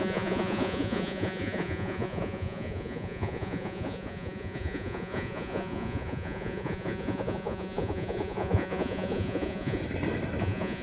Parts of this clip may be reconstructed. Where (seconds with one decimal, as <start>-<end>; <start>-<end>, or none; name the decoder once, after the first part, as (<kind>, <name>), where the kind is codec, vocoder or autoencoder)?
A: 0.0-9.8 (vocoder, Vocos); 10.4-10.8